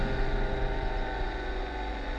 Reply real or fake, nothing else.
fake